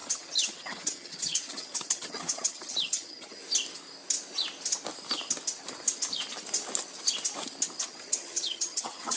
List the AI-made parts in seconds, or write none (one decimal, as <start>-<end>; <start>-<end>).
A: 0.0-3.4; 7.8-9.2